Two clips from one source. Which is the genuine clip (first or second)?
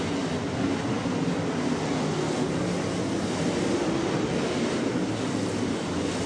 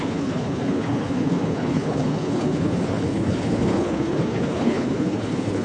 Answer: first